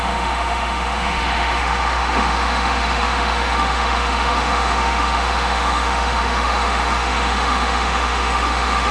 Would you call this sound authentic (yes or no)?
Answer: no